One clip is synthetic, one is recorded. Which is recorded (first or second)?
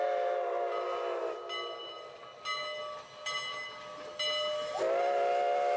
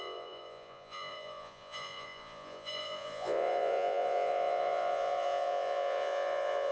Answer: first